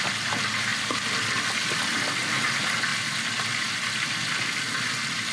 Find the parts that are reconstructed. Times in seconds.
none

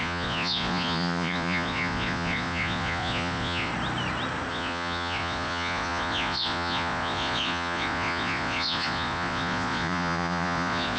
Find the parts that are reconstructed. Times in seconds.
0.0-3.7; 4.5-11.0

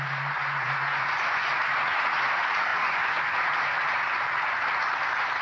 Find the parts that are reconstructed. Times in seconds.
0.4-1.5; 2.7-3.2

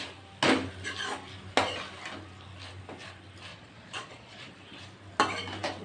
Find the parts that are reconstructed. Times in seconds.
3.5-4.5